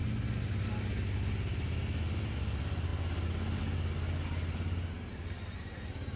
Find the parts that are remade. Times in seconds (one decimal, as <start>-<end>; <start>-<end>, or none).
none